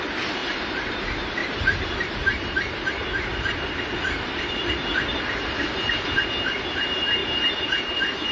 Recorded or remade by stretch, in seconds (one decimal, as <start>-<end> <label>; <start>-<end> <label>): 0.0-1.4 recorded; 1.4-2.9 remade; 2.9-7.2 recorded; 7.2-8.3 remade